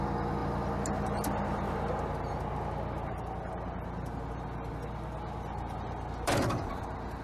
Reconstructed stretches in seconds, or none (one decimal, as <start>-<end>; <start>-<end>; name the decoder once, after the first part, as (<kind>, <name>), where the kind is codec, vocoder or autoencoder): none